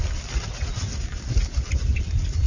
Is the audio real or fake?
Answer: real